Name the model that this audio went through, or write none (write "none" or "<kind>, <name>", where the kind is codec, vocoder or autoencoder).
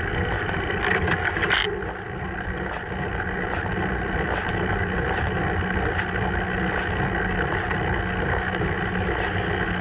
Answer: none